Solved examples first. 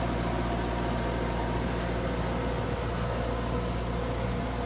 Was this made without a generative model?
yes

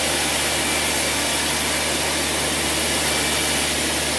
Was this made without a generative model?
yes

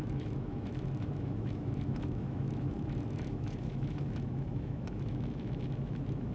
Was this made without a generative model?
no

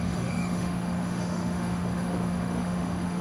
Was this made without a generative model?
no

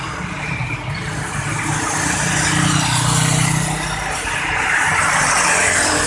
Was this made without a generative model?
yes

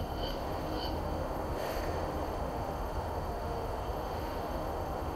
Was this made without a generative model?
no